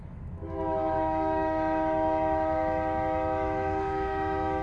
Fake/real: fake